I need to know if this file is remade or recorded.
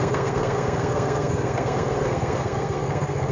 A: remade